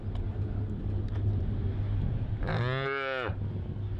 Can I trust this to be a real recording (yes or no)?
yes